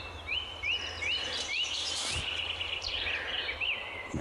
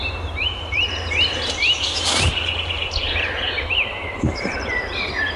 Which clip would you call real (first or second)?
first